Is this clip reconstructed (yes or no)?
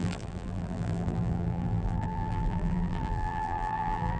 yes